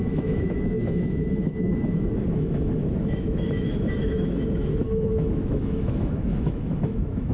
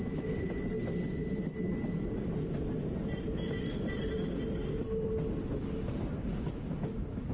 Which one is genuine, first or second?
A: second